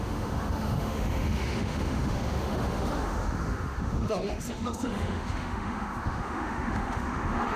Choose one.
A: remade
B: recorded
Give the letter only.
A